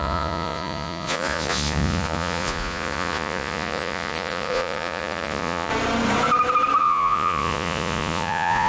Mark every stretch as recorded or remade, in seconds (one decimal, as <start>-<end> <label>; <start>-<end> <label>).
0.0-5.7 remade; 5.7-6.8 recorded; 6.8-8.7 remade